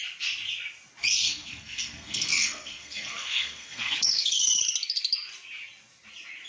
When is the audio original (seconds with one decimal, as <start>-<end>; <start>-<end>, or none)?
0.0-1.1; 4.6-6.5